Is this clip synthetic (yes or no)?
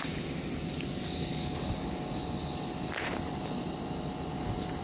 no